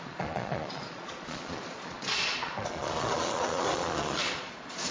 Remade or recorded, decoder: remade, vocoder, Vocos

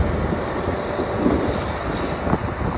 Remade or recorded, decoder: recorded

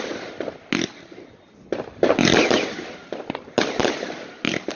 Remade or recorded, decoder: recorded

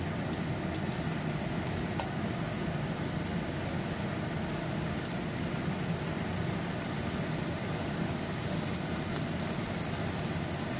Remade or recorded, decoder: recorded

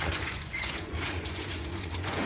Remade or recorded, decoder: remade, vocoder, Vocos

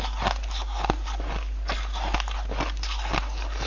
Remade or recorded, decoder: recorded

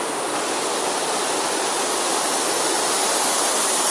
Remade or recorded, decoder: recorded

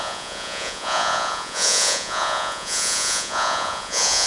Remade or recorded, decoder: remade, vocoder, Vocos